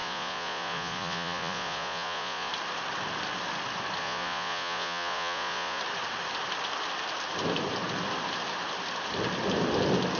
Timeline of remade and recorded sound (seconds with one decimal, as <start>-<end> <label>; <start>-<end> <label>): 0.0-2.5 remade; 2.5-4.0 recorded; 4.0-5.8 remade; 5.8-10.2 recorded